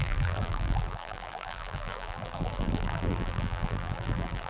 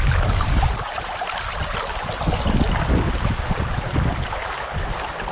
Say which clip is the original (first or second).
second